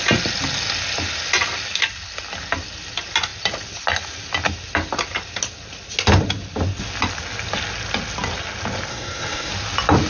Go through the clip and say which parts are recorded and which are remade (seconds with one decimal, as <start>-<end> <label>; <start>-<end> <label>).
0.0-8.9 recorded; 8.9-9.5 remade; 9.5-10.1 recorded